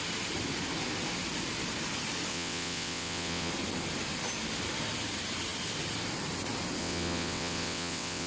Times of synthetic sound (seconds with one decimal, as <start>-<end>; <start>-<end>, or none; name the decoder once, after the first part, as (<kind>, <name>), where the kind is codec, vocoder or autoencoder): 2.3-3.5 (vocoder, WaveNeXt); 6.8-8.3